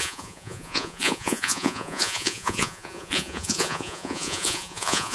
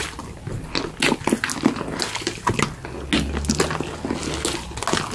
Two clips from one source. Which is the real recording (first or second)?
second